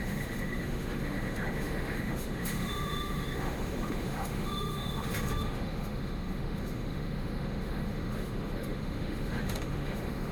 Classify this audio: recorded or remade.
remade